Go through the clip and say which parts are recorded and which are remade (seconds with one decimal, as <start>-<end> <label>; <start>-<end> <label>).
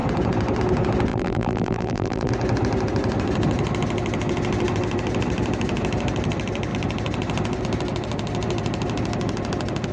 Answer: 0.0-1.1 recorded; 1.1-2.3 remade; 2.3-9.9 recorded